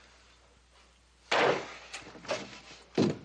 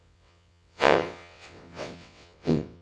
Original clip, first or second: first